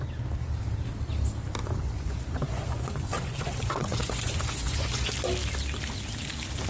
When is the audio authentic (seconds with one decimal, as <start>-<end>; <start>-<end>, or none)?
0.0-1.6; 5.1-6.7